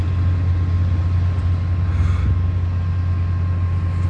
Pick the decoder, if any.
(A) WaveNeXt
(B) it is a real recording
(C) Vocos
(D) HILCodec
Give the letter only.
B